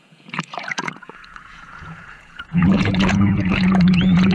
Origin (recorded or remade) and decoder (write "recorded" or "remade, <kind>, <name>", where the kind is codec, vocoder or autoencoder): remade, vocoder, Vocos